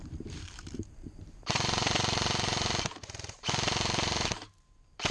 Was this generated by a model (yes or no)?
yes